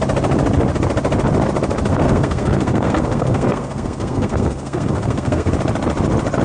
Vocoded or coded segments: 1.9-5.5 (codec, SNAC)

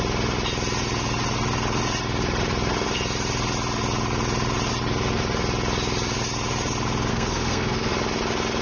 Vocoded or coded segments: 7.1-7.9 (codec, SNAC)

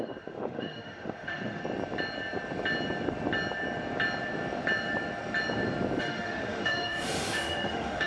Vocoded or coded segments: 0.0-1.6 (autoencoder, DAC-VAE); 6.0-8.1

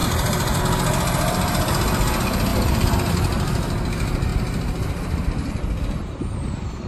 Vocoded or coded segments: 0.0-0.6 (vocoder, BigVGAN v2); 2.5-3.1; 4.3-5.5

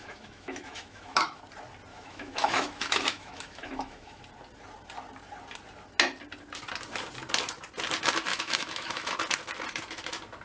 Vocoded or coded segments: 0.0-1.4 (autoencoder, DAC-VAE); 1.9-4.2; 8.3-9.1

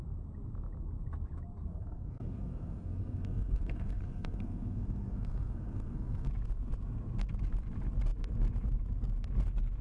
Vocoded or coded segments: 1.7-6.3 (codec, SNAC)

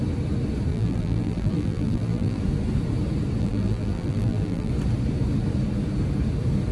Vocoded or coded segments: 0.7-2.4 (vocoder, BigVGAN v2); 3.4-4.7